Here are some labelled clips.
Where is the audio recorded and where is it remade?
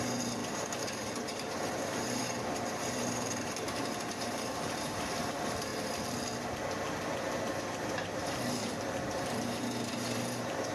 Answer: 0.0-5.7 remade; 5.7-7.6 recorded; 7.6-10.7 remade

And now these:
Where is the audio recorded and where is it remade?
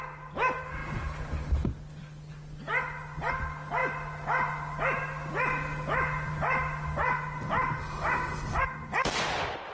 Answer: 0.0-9.7 recorded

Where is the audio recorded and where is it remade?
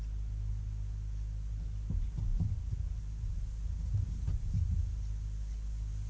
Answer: 0.0-6.1 recorded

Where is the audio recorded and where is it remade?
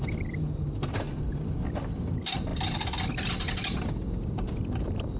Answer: 0.0-5.2 recorded